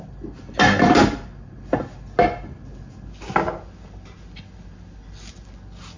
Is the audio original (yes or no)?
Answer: yes